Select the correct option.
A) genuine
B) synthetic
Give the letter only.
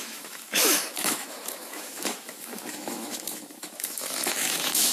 B